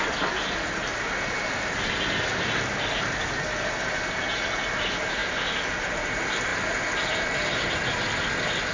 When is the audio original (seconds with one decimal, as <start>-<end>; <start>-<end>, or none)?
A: 0.0-8.7